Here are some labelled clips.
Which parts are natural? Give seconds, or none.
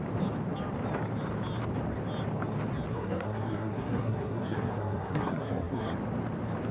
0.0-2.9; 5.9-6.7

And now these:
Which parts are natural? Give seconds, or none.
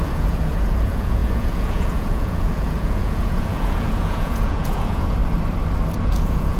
5.2-6.0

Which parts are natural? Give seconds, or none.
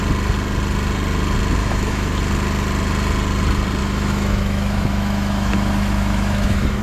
0.0-1.6; 2.2-3.8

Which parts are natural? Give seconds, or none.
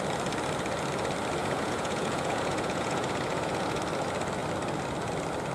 0.0-1.4; 3.8-5.5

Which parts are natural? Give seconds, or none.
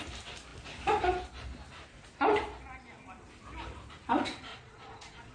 0.0-4.5